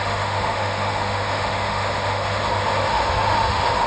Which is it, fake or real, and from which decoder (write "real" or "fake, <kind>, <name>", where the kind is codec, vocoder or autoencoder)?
fake, autoencoder, DAC-VAE